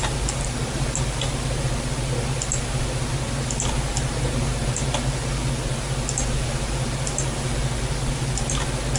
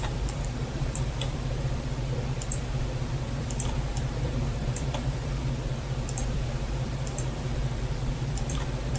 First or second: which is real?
first